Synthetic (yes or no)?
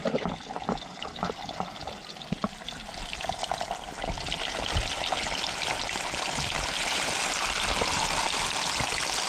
no